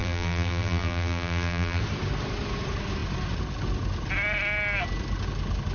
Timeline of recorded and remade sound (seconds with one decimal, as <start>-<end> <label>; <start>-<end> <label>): 0.0-1.8 remade; 1.8-5.7 recorded